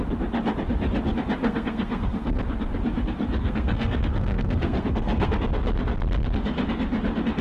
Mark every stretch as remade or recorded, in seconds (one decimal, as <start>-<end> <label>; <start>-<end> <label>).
0.0-1.4 recorded; 1.4-2.4 remade; 2.4-3.4 recorded; 3.4-5.4 remade; 5.4-7.4 recorded